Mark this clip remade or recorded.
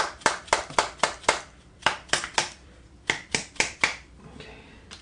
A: remade